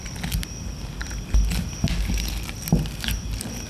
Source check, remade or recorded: recorded